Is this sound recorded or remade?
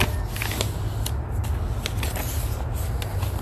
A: recorded